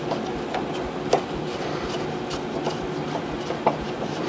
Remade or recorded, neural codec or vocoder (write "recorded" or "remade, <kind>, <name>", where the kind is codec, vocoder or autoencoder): recorded